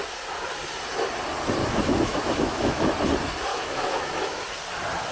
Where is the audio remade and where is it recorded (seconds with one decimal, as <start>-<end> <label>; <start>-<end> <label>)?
0.0-1.6 recorded; 1.6-2.9 remade; 2.9-3.5 recorded; 3.5-4.4 remade; 4.4-5.1 recorded